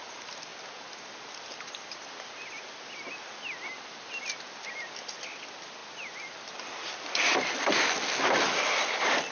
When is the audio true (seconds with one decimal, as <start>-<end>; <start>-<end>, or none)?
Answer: 0.0-9.3